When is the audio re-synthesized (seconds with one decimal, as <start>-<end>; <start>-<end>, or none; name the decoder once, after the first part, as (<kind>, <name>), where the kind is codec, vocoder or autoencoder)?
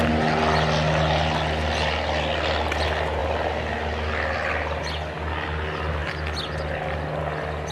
none